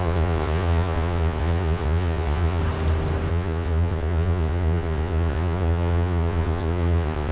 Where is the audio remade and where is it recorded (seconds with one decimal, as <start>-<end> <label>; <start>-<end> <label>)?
0.0-2.6 remade; 2.6-3.3 recorded; 3.3-7.3 remade